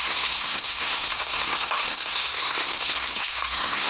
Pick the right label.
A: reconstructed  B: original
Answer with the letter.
A